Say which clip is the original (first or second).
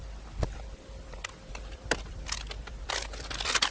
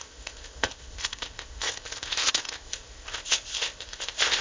first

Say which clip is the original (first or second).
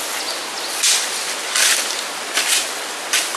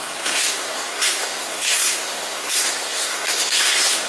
first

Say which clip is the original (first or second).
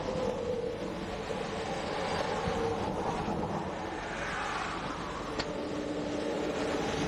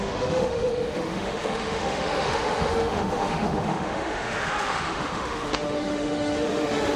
first